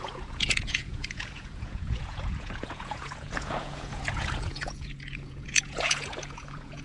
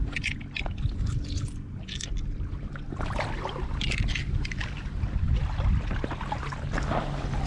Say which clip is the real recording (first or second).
second